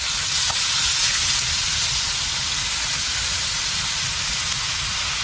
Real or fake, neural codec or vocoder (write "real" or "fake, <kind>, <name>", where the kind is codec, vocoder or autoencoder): real